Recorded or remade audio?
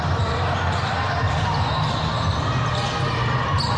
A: recorded